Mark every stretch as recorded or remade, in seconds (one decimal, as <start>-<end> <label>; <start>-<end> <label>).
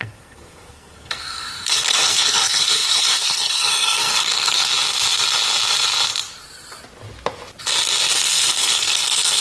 0.0-4.7 remade; 4.7-8.1 recorded; 8.1-9.4 remade